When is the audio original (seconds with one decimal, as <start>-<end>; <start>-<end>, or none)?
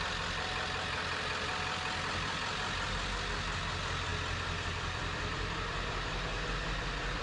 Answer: 0.0-7.2